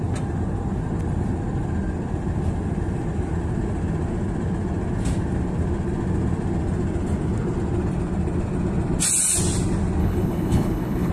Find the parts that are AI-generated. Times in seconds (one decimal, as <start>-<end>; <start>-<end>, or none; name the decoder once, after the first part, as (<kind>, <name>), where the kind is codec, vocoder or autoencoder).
10.0-11.1 (codec, HILCodec)